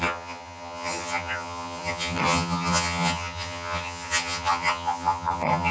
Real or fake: fake